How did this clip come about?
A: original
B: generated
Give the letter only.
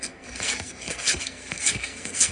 B